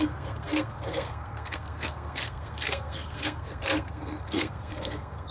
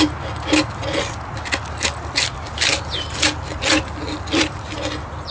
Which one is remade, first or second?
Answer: first